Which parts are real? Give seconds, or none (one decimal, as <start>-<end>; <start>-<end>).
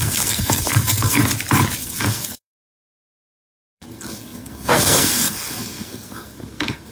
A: 1.2-1.8